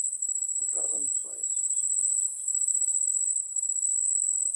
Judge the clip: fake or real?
real